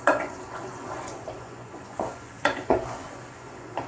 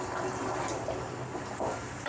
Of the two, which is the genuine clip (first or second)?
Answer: second